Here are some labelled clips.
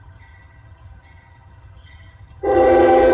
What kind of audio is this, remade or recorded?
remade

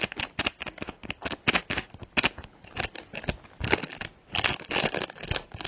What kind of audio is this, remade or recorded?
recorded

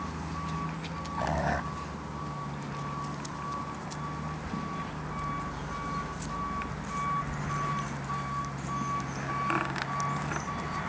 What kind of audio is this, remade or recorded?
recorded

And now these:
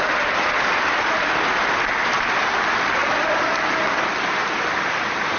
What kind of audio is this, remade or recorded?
recorded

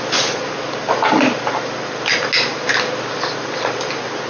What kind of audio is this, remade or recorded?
recorded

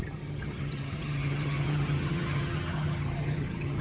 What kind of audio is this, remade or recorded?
remade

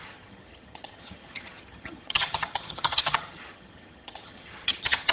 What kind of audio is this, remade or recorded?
remade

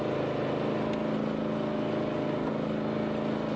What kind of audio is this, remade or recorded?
recorded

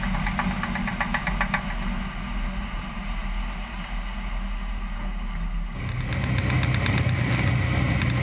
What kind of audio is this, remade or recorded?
recorded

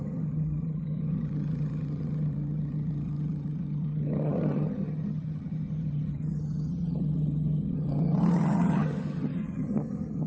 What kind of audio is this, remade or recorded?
remade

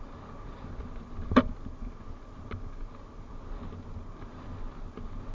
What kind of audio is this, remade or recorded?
recorded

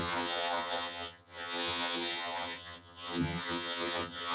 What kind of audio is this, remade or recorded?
remade